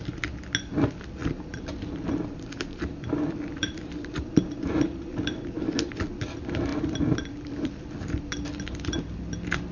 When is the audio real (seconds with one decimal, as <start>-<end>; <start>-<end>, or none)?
0.0-1.2; 6.1-6.7